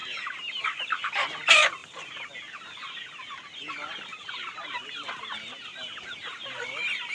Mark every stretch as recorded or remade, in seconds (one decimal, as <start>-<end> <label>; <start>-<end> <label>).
0.0-0.6 remade; 0.6-1.8 recorded; 1.8-2.3 remade; 2.3-4.1 recorded; 4.1-4.9 remade; 4.9-7.1 recorded